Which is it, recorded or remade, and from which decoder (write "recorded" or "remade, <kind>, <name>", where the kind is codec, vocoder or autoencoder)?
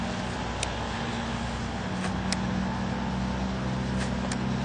recorded